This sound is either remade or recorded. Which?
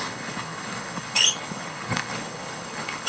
remade